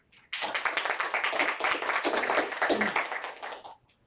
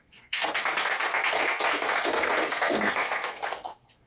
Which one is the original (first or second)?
first